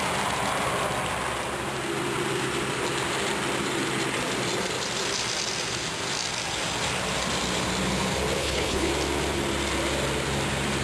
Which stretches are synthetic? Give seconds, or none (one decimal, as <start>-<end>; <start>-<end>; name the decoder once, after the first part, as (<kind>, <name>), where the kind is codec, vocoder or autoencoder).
8.4-8.9 (codec, HILCodec)